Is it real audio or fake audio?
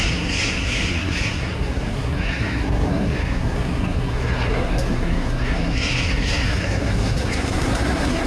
fake